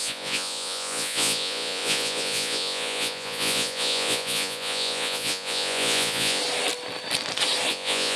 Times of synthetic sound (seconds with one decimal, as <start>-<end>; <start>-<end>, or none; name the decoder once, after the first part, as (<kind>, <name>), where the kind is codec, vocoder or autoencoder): 0.0-6.4 (vocoder, Vocos); 7.7-8.2